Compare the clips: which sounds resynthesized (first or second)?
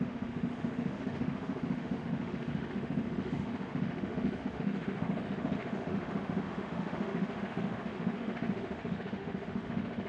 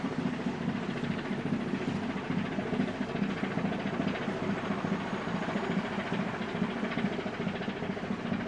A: first